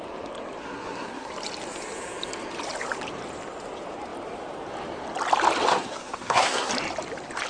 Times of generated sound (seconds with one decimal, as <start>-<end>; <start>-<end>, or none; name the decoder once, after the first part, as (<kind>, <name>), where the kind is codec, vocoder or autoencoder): 0.6-1.3 (codec, SNAC); 5.7-6.7